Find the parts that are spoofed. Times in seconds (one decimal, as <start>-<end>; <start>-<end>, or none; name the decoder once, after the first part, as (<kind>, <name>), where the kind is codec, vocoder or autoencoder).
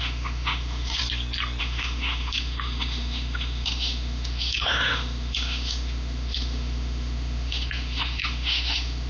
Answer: 0.0-1.0 (autoencoder, DAC-VAE); 1.6-9.1